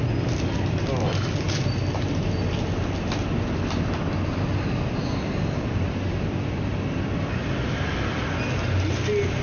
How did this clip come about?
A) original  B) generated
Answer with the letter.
A